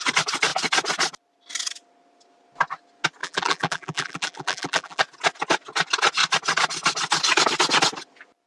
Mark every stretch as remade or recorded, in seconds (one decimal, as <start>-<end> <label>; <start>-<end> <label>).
0.0-3.2 recorded; 3.2-5.0 remade; 5.0-8.5 recorded